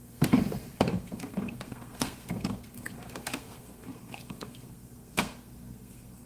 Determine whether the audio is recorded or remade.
remade